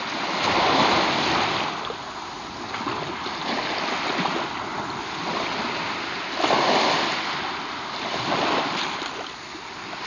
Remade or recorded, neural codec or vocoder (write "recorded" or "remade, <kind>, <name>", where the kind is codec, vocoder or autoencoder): recorded